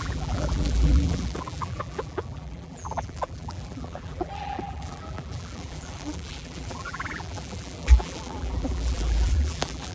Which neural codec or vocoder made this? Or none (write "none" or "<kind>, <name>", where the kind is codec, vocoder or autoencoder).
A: vocoder, BigVGAN v2